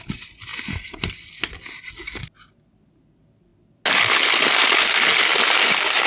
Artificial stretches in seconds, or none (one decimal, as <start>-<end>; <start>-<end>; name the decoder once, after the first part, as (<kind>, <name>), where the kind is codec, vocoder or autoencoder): none